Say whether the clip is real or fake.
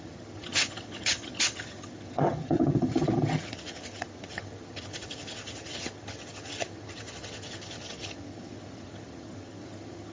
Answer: fake